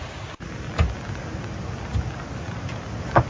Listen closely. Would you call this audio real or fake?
real